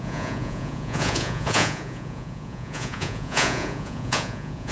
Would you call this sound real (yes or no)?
no